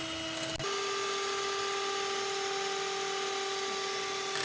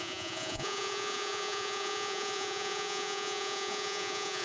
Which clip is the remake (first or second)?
second